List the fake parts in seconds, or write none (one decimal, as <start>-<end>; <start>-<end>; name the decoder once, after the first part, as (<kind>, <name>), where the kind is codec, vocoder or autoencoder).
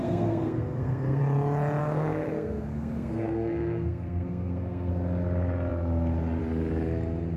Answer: 0.0-1.2 (codec, SNAC); 1.8-4.9